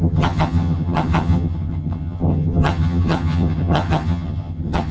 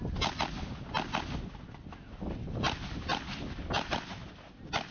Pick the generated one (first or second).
first